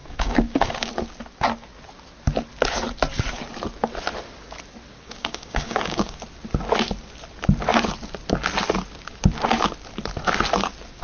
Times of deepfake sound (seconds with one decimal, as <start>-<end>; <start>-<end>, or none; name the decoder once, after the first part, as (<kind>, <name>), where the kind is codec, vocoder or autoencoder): 0.0-0.9 (codec, DAC); 4.9-6.2